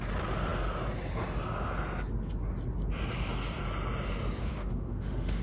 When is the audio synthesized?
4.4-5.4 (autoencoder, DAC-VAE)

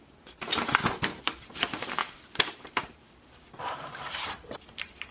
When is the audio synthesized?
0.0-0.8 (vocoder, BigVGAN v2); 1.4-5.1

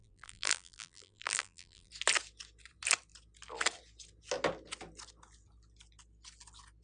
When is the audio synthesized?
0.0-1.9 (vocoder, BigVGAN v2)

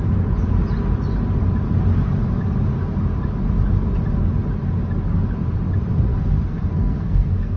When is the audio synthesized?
6.1-7.6 (codec, SNAC)

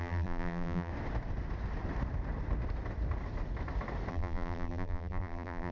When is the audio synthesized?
0.0-0.9 (vocoder, BigVGAN v2); 4.1-5.7

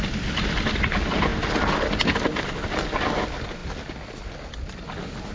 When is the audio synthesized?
none

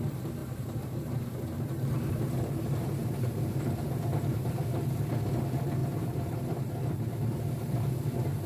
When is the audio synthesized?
0.4-4.5 (vocoder, BigVGAN v2); 5.8-7.9